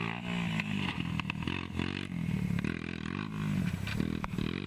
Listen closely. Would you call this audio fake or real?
real